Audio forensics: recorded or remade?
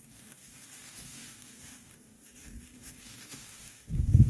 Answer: remade